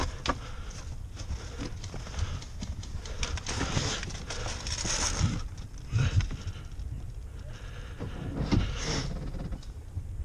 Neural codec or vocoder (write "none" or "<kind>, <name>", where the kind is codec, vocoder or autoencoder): none